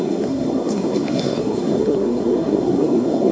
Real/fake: fake